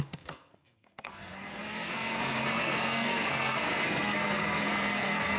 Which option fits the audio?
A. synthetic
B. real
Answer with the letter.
A